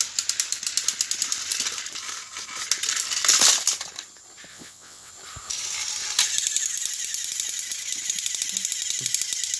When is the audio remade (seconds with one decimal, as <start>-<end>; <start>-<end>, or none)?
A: 4.5-5.1